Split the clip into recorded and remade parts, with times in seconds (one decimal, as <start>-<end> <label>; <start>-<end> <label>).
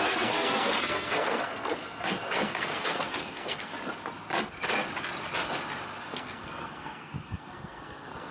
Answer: 0.0-3.7 remade; 3.7-6.0 recorded; 6.0-8.3 remade